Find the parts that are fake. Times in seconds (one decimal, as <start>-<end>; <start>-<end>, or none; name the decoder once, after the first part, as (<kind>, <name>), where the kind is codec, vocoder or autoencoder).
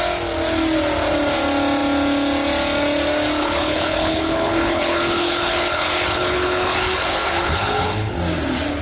3.4-8.1 (codec, HILCodec)